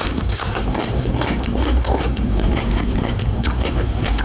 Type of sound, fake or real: fake